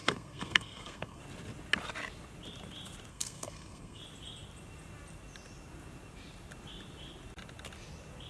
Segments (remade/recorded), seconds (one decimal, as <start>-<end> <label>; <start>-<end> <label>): 0.0-1.2 remade; 1.2-3.1 recorded; 3.1-4.0 remade; 4.0-8.3 recorded